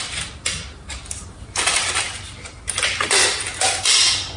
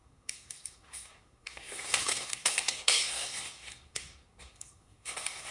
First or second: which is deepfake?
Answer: second